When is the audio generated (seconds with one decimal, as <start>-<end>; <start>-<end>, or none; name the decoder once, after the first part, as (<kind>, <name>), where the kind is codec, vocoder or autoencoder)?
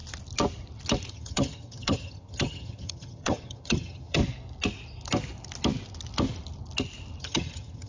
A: 1.1-4.2 (vocoder, HiFi-GAN); 7.2-7.9